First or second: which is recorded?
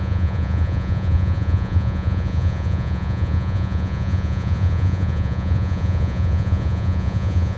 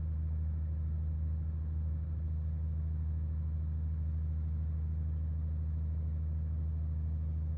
second